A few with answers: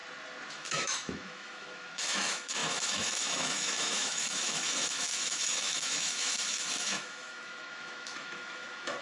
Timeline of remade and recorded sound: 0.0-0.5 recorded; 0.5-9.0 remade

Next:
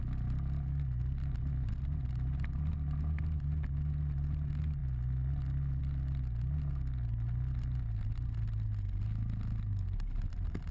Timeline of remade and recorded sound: 0.0-10.7 recorded

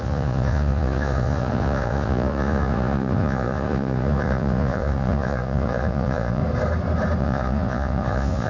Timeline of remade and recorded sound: 0.0-6.4 remade; 6.4-7.2 recorded; 7.2-8.5 remade

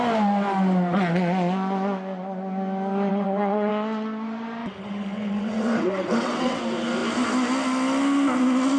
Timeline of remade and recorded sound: 0.0-3.1 recorded; 3.1-3.7 remade; 3.7-4.6 recorded; 4.6-6.6 remade; 6.6-8.8 recorded

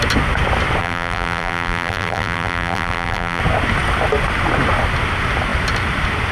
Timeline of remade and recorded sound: 0.0-0.8 recorded; 0.8-3.4 remade; 3.4-6.3 recorded

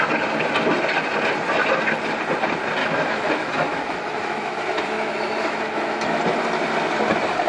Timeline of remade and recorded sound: 0.0-2.8 recorded; 2.8-6.2 remade; 6.2-7.5 recorded

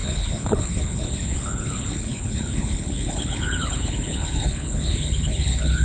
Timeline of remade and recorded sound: 0.0-5.8 remade

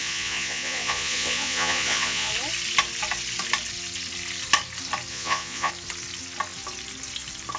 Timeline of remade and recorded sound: 0.0-2.3 remade; 2.3-5.1 recorded; 5.1-5.7 remade; 5.7-7.6 recorded